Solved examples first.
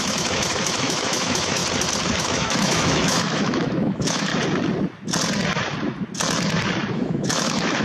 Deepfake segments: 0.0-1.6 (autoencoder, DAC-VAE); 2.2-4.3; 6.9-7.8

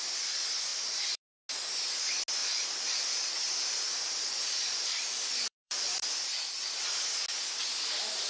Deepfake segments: 0.7-1.2 (vocoder, BigVGAN v2); 2.4-6.1

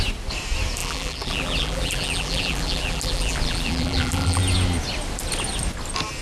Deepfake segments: 0.8-4.4 (vocoder, BigVGAN v2)

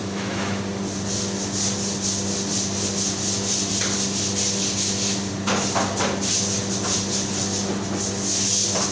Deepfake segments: 0.0-0.6 (autoencoder, DAC-VAE)

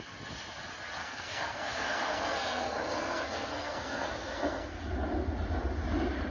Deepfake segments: 1.0-4.8 (codec, SNAC)

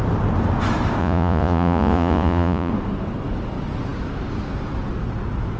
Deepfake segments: 1.0-2.7 (vocoder, Vocos)

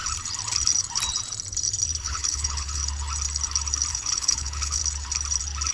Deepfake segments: 2.0-2.8 (codec, HILCodec); 3.9-4.8